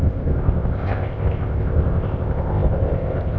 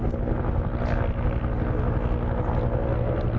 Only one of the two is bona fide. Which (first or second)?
second